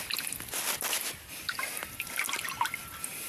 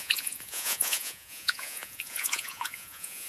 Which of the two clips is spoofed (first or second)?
second